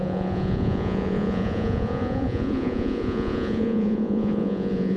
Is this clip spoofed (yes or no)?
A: yes